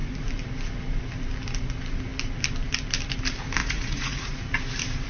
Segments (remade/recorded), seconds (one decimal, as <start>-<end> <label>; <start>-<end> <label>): 0.0-3.6 recorded; 3.6-4.3 remade; 4.3-5.1 recorded